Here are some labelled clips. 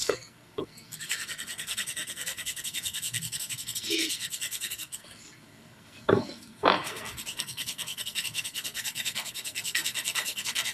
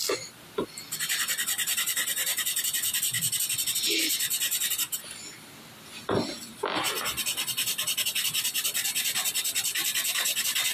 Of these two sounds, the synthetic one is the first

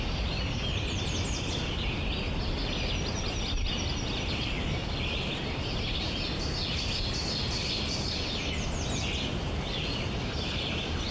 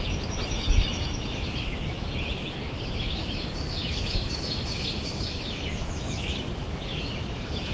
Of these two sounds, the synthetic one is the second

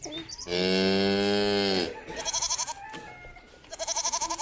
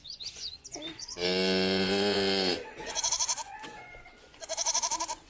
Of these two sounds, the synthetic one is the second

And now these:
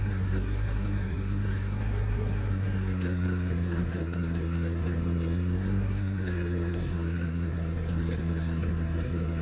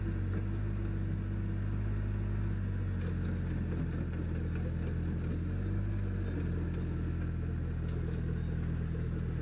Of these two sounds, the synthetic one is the first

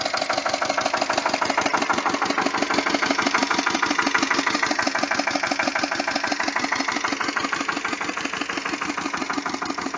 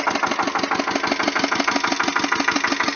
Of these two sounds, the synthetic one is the first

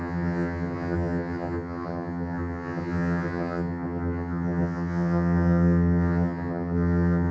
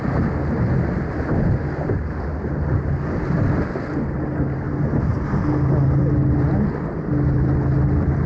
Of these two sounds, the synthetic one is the first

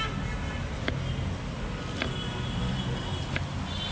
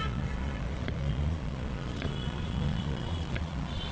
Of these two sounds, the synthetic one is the second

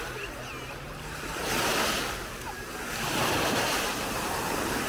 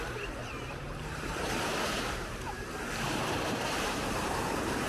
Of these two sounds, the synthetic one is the second